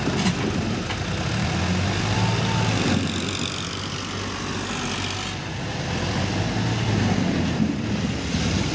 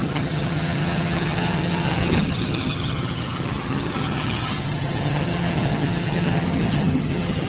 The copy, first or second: second